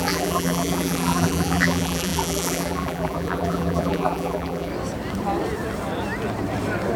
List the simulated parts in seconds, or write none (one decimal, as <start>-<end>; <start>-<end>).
0.0-4.7